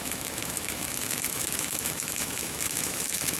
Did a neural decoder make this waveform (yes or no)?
yes